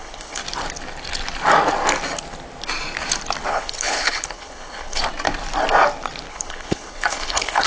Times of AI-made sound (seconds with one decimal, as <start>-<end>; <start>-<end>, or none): 0.0-0.4; 3.5-5.0; 6.3-7.7